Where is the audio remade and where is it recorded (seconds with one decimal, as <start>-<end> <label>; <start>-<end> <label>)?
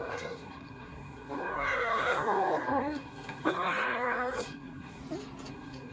0.0-5.0 remade; 5.0-5.5 recorded; 5.5-5.9 remade